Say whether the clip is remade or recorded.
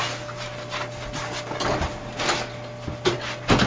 recorded